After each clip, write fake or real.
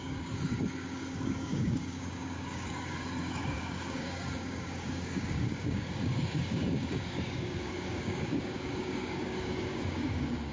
fake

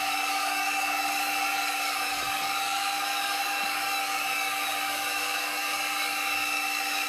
fake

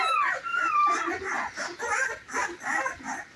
real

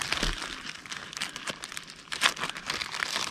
real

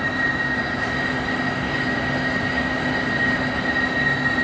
real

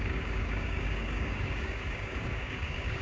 fake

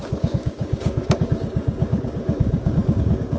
fake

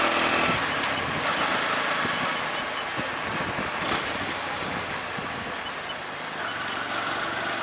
real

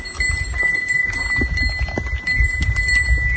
real